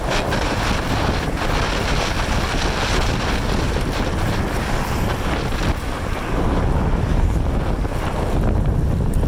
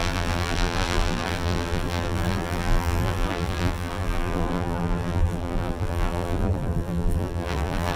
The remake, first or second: second